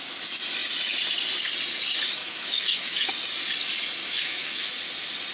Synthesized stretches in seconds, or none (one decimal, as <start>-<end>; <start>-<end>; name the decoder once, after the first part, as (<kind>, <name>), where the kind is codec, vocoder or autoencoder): 2.2-3.1 (autoencoder, DAC-VAE); 4.0-4.7

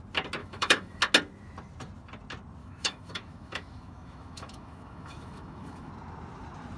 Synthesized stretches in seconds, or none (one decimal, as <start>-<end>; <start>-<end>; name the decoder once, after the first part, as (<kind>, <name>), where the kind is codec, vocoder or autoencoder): 0.4-1.0 (autoencoder, DAC-VAE); 2.6-5.9

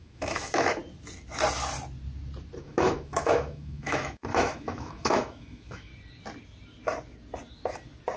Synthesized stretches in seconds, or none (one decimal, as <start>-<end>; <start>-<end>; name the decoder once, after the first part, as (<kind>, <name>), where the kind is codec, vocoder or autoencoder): 0.0-0.8 (autoencoder, DAC-VAE); 2.6-5.9

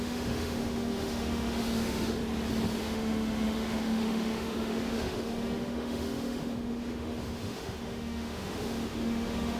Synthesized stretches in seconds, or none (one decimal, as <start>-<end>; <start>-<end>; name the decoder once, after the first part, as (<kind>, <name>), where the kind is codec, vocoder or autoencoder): 0.0-2.2 (autoencoder, DAC-VAE); 2.8-9.6

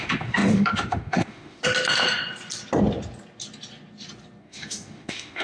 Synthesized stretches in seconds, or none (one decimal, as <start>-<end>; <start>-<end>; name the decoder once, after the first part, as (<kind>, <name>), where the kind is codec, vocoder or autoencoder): 0.0-1.6 (autoencoder, DAC-VAE); 4.4-5.4

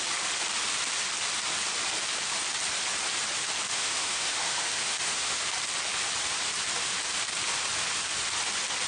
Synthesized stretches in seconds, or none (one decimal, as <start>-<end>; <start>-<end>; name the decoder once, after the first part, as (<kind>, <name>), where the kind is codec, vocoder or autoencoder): 3.7-5.4 (autoencoder, DAC-VAE)

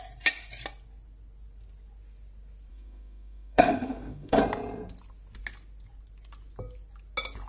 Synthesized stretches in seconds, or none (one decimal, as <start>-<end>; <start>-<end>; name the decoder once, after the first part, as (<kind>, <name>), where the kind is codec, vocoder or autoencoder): 2.7-4.4 (autoencoder, DAC-VAE)

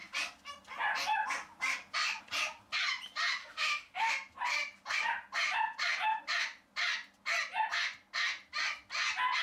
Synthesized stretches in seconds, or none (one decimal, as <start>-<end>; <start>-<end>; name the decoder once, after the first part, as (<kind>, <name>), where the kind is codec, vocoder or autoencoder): 3.4-4.1 (autoencoder, DAC-VAE)